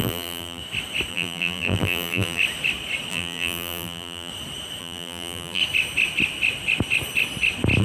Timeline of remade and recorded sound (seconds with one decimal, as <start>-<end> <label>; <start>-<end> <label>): 0.0-0.6 remade; 0.6-1.1 recorded; 1.1-2.4 remade; 2.4-3.1 recorded; 3.1-4.3 remade; 4.3-4.8 recorded; 4.8-5.6 remade; 5.6-7.8 recorded